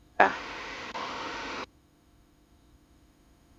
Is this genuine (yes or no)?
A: no